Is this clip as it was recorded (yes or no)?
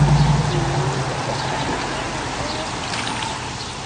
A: yes